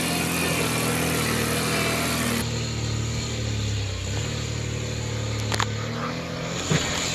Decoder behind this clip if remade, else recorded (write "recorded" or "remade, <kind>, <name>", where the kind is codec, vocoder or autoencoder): recorded